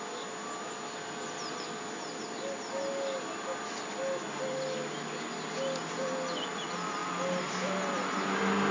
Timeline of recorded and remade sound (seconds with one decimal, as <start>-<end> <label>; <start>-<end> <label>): 0.0-8.7 recorded